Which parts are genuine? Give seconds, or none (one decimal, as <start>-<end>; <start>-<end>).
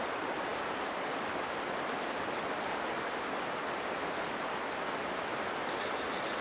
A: 0.0-6.4